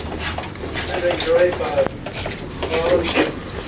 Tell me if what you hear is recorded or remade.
recorded